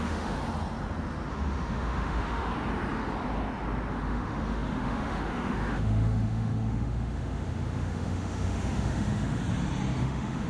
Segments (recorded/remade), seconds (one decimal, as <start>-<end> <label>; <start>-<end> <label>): 0.0-0.4 remade; 0.4-1.3 recorded; 1.3-2.5 remade; 2.5-3.9 recorded; 3.9-9.4 remade; 9.4-10.0 recorded; 10.0-10.5 remade